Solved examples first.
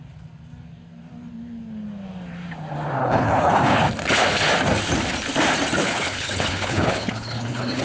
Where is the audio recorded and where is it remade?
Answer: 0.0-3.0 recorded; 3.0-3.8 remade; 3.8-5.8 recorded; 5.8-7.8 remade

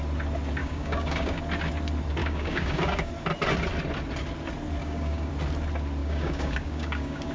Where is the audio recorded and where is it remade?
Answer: 0.0-0.6 recorded; 0.6-1.4 remade; 1.4-2.2 recorded; 2.2-3.1 remade; 3.1-4.8 recorded; 4.8-5.3 remade; 5.3-6.0 recorded; 6.0-7.3 remade